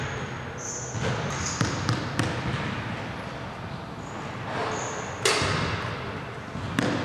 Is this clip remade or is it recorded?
recorded